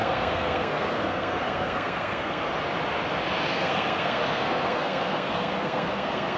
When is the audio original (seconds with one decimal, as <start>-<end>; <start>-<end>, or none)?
2.5-3.5

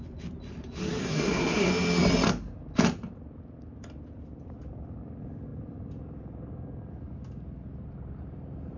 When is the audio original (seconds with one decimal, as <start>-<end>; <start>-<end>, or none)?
0.0-1.0; 1.7-8.8

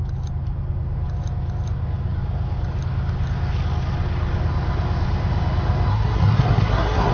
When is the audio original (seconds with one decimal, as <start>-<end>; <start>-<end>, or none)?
0.0-5.9

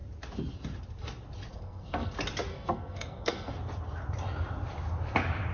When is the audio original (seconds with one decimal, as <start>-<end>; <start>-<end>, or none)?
0.0-1.5; 2.1-2.5; 3.5-5.5